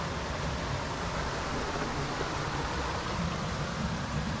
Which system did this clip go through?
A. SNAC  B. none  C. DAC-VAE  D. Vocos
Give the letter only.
B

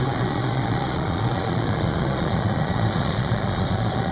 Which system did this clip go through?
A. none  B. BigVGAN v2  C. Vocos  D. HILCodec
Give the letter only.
C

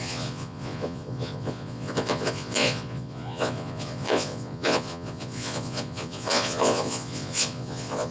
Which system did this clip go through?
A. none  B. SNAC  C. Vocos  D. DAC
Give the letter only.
C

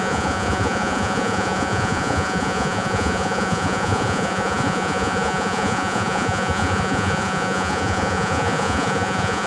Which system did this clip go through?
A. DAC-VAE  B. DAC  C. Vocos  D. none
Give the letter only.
C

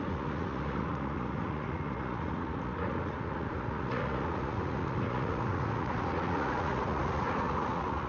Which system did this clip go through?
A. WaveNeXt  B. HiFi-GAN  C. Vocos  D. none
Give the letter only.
C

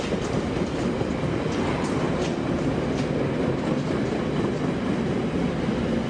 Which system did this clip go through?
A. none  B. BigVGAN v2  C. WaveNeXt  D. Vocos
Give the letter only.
A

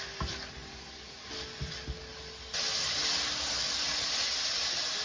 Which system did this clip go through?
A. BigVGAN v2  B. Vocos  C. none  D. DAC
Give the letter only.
C